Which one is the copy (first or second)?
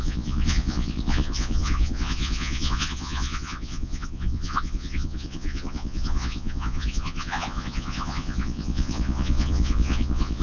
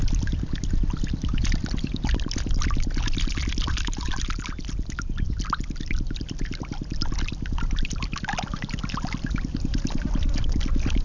first